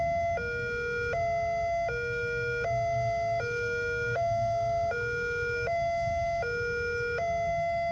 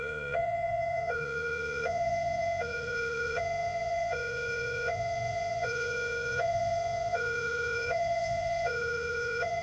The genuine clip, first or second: first